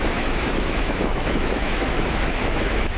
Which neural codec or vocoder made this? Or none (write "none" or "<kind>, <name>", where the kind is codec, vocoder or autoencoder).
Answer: autoencoder, DAC-VAE